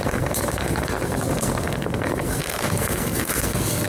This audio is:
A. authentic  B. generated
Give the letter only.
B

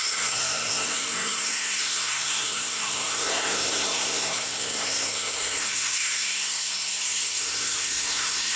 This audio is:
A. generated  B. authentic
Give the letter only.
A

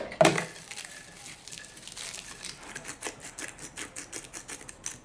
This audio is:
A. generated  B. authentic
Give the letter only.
B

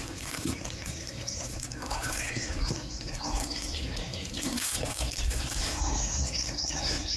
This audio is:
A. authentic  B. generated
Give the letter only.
B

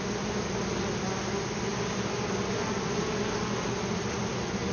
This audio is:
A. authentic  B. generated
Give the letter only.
A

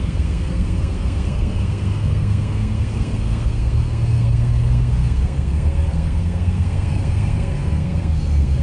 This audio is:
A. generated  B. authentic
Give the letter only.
A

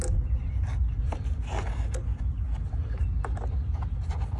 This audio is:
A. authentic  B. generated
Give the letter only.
A